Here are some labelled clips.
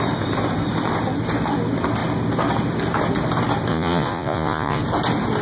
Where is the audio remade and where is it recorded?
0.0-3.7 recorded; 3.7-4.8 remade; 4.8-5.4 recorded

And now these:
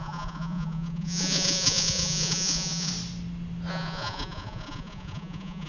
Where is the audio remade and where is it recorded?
0.0-2.9 remade; 2.9-3.7 recorded; 3.7-5.7 remade